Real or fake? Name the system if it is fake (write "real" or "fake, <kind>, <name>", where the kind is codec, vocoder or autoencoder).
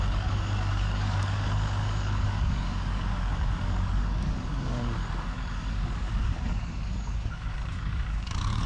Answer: fake, codec, DAC